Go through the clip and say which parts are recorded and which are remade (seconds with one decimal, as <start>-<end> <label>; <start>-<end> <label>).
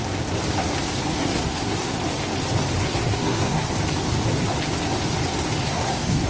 0.0-1.2 recorded; 1.2-2.0 remade; 2.0-2.9 recorded; 2.9-3.7 remade; 3.7-5.6 recorded; 5.6-6.3 remade